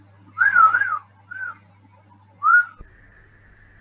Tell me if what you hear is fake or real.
real